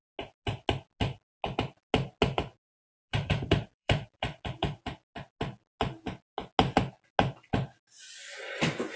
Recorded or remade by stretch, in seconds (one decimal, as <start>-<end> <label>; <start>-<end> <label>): 0.0-3.1 recorded; 3.1-4.9 remade; 4.9-9.0 recorded